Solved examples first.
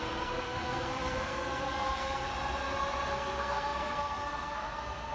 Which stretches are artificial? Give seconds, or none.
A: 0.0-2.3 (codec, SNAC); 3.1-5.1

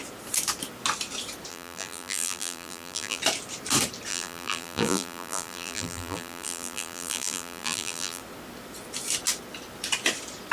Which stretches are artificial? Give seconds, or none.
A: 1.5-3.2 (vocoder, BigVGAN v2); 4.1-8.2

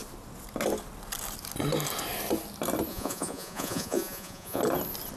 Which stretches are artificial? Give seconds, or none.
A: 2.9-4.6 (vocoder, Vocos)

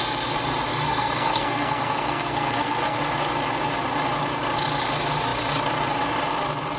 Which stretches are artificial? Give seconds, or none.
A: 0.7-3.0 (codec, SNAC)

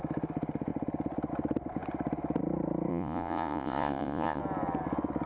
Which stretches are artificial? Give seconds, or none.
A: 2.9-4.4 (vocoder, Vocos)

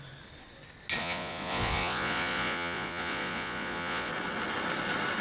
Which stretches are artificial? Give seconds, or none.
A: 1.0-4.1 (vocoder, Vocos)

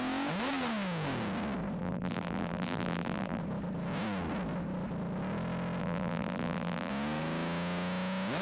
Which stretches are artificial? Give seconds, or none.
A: 1.8-3.4 (vocoder, BigVGAN v2); 5.8-6.9

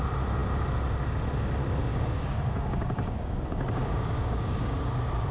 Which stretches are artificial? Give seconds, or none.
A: 1.9-4.8 (codec, DAC)